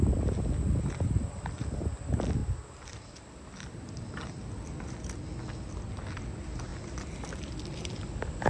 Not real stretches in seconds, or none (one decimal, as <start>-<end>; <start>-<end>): none